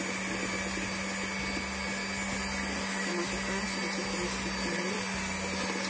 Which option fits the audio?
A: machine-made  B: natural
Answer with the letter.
B